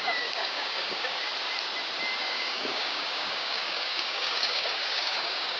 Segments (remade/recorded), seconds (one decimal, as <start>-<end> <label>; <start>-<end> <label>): 0.0-1.3 remade; 1.3-2.2 recorded; 2.2-5.6 remade